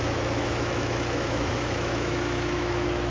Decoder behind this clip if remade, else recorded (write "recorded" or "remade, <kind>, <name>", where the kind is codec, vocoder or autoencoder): remade, autoencoder, DAC-VAE